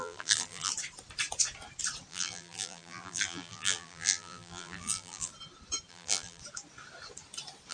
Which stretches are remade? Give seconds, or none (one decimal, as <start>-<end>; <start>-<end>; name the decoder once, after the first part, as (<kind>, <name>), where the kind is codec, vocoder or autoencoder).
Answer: 0.0-0.7 (vocoder, BigVGAN v2); 2.1-5.3; 5.9-6.4